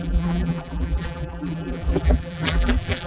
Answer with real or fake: fake